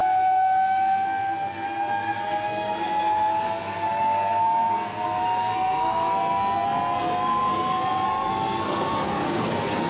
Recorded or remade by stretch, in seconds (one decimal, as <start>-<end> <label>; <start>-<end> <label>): 0.0-9.9 remade